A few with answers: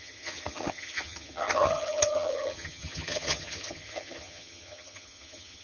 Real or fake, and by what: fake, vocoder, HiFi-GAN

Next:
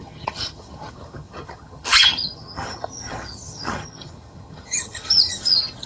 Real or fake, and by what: fake, vocoder, HiFi-GAN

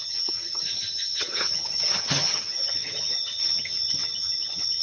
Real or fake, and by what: fake, vocoder, HiFi-GAN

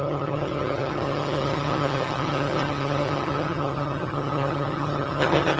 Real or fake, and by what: fake, vocoder, HiFi-GAN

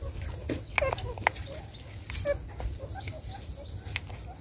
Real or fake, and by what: real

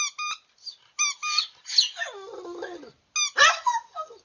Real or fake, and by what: real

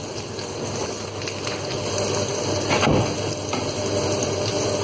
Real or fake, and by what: real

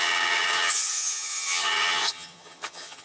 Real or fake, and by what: fake, vocoder, HiFi-GAN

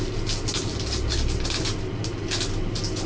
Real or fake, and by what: real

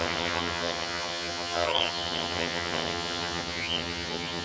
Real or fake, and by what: fake, vocoder, HiFi-GAN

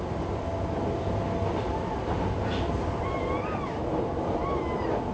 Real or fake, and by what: real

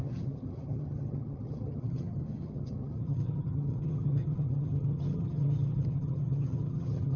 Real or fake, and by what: fake, vocoder, HiFi-GAN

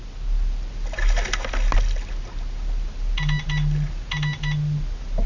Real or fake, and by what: real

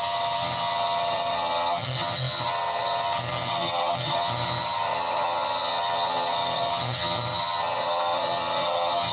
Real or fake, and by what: fake, vocoder, HiFi-GAN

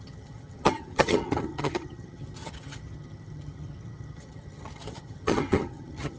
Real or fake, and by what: fake, vocoder, HiFi-GAN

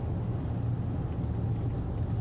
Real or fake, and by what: real